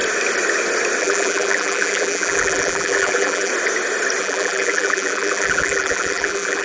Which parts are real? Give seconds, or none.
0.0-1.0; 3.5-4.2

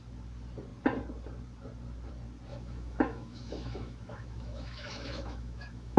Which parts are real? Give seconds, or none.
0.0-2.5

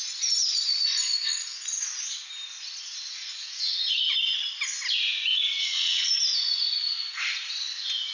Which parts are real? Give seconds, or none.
0.0-5.6; 6.1-8.1

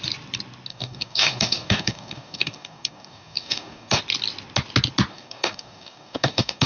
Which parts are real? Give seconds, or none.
0.0-0.7; 4.0-5.1